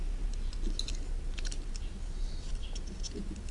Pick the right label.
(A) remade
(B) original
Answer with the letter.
B